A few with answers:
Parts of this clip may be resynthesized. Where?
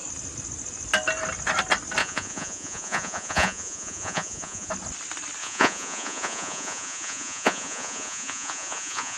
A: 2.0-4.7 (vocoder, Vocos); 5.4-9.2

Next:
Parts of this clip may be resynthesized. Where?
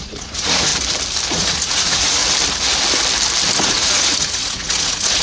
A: 0.0-0.7 (vocoder, Vocos); 1.3-2.2; 3.6-5.2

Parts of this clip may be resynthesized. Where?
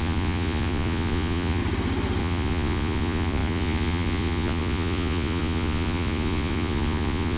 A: 0.0-1.6 (vocoder, Vocos); 2.2-7.4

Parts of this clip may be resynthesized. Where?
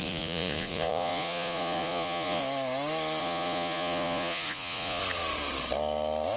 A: 0.0-2.4 (vocoder, Vocos); 3.2-5.0